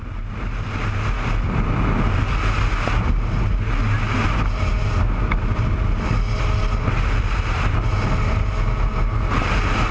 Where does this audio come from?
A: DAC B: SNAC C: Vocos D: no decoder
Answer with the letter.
D